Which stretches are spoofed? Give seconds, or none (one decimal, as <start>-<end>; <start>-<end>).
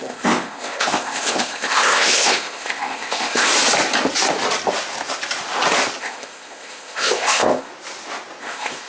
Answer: 0.0-3.5; 6.0-7.7; 8.4-8.9